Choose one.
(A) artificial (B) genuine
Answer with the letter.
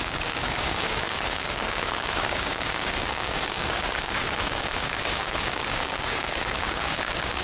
A